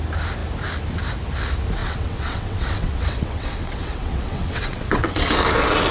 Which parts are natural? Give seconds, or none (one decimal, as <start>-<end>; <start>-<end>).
0.0-1.8; 5.3-5.9